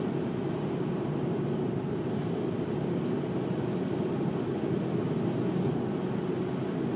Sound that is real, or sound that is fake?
real